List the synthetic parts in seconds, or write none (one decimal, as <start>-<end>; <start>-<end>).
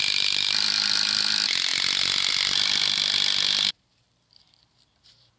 0.0-1.7; 2.3-5.4